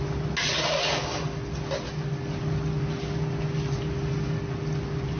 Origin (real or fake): real